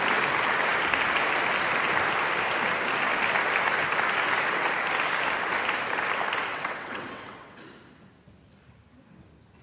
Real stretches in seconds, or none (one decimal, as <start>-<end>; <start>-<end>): 0.0-6.5; 7.6-9.6

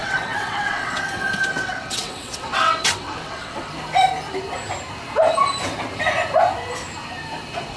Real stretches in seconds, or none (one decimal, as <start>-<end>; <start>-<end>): 3.7-7.8

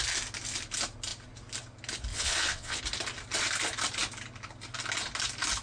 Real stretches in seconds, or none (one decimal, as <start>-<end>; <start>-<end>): 0.0-2.1; 2.8-5.6

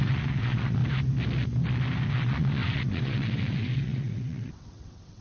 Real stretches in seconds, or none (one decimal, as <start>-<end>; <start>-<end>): 0.8-2.1

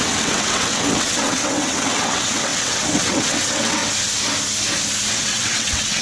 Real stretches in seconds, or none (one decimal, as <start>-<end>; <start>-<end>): 3.8-5.1

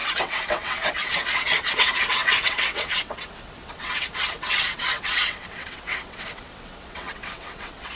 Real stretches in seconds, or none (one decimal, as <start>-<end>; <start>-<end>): none

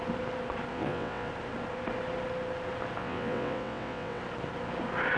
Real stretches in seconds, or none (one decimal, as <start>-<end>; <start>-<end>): 0.0-0.7; 1.3-3.0; 4.2-5.2

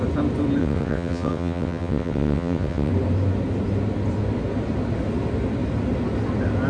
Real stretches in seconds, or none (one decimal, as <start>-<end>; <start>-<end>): 0.0-0.6; 2.9-6.7